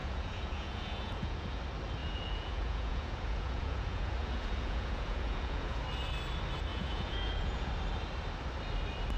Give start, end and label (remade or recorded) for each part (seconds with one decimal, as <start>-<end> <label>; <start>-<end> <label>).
0.0-1.6 remade; 1.6-2.0 recorded; 2.0-5.8 remade; 5.8-6.7 recorded; 6.7-7.7 remade; 7.7-9.2 recorded